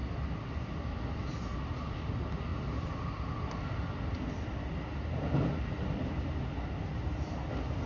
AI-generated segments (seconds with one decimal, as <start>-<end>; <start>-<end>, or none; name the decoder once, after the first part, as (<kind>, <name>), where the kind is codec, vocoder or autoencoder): none

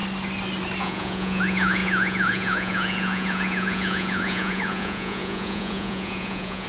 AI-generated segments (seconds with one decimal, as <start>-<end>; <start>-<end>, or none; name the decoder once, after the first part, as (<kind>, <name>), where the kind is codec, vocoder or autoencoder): 0.8-6.7 (vocoder, Vocos)

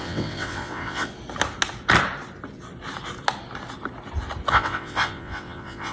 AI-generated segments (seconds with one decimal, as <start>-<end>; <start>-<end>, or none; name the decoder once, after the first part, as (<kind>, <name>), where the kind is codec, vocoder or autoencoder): 0.0-1.1 (vocoder, WaveNeXt); 4.5-5.9

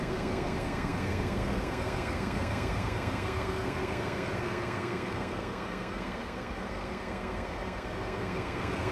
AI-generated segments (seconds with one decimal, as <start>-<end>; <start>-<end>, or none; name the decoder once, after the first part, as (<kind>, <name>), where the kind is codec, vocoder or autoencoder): 0.0-8.9 (codec, SNAC)